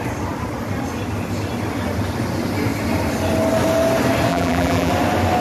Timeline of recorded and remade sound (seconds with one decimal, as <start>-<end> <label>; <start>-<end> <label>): 0.0-4.3 recorded; 4.3-4.9 remade; 4.9-5.4 recorded